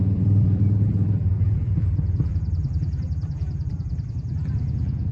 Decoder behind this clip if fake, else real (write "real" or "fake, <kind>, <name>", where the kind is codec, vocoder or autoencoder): fake, vocoder, BigVGAN v2